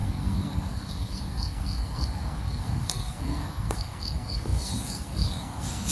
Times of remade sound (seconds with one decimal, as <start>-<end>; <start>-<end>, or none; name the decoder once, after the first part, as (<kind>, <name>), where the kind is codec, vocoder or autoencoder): 0.0-5.9 (codec, SNAC)